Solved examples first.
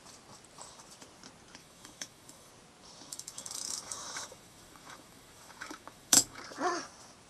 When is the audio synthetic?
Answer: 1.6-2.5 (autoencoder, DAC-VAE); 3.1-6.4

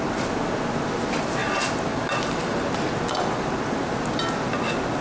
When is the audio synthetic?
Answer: none

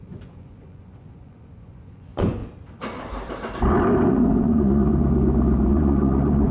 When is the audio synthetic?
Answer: 0.0-2.4 (vocoder, Vocos); 4.1-4.9; 5.7-6.5